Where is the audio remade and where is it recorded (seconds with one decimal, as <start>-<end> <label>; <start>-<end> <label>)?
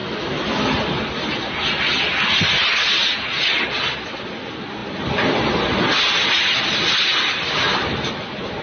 0.0-0.6 remade; 0.6-8.6 recorded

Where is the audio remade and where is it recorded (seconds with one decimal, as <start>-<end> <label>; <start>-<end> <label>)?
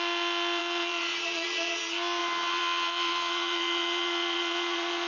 0.0-0.6 recorded; 0.6-1.8 remade; 1.8-2.2 recorded; 2.2-5.1 remade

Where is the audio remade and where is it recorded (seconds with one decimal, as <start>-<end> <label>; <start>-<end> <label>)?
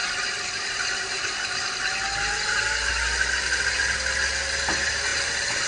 0.0-5.7 recorded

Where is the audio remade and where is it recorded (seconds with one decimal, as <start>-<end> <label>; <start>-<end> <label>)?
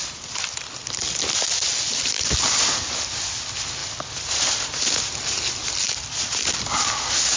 0.0-3.8 recorded; 3.8-4.8 remade; 4.8-7.4 recorded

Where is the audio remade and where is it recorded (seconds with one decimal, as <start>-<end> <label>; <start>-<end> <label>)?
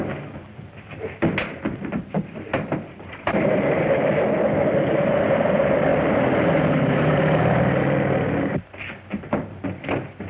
0.0-1.4 recorded; 1.4-4.1 remade; 4.1-5.9 recorded; 5.9-7.8 remade; 7.8-10.3 recorded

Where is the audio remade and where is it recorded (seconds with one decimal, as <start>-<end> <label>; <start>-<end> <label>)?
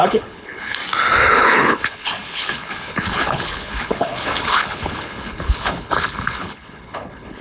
0.0-0.8 remade; 0.8-1.3 recorded; 1.3-7.4 remade